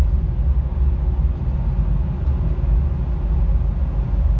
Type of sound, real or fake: real